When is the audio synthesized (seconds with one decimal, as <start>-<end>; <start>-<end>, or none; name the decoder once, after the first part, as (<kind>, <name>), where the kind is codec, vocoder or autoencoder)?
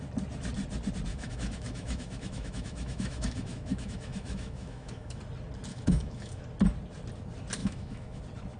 1.1-5.2 (autoencoder, DAC-VAE); 5.7-6.4; 7.6-8.2